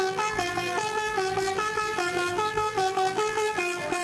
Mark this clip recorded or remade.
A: remade